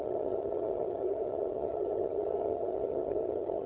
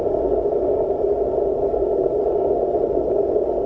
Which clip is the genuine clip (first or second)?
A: second